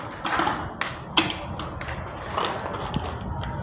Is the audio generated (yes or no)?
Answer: no